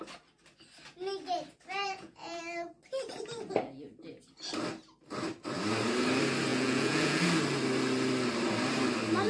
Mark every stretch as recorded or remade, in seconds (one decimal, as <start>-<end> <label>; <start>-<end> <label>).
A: 0.0-1.8 recorded; 1.8-2.4 remade; 2.4-6.5 recorded; 6.5-7.2 remade; 7.2-9.3 recorded